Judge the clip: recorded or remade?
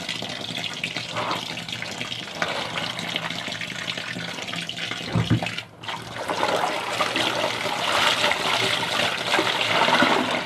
recorded